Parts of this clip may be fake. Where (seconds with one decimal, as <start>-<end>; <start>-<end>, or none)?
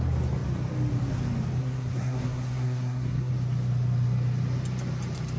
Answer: 1.6-3.3